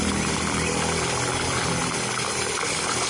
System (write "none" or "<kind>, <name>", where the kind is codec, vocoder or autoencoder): none